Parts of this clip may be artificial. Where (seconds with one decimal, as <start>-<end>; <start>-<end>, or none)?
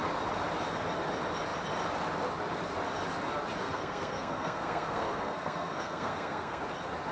3.6-6.6